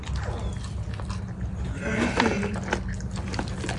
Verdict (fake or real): real